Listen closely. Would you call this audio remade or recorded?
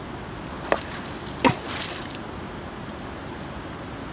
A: recorded